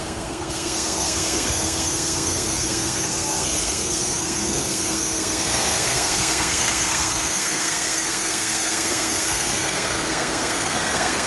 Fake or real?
fake